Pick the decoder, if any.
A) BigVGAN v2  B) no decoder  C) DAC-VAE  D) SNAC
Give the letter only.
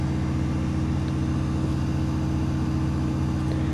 B